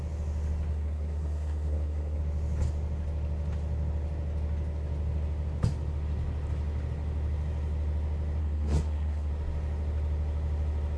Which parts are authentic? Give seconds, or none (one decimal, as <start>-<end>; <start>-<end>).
0.0-0.7; 2.2-8.4; 9.3-11.0